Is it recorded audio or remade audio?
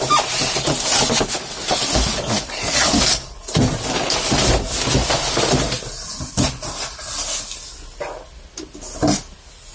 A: recorded